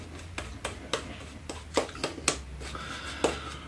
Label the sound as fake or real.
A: real